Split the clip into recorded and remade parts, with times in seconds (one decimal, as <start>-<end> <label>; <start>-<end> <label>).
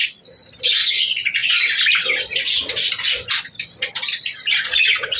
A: 0.0-5.2 recorded